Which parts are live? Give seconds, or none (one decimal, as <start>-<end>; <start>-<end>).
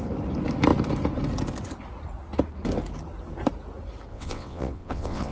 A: 0.0-4.1